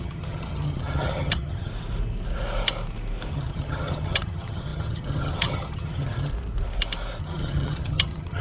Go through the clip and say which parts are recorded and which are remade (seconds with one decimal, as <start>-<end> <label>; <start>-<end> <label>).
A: 0.0-1.7 remade; 1.7-3.3 recorded; 3.3-6.3 remade; 6.3-7.2 recorded; 7.2-8.4 remade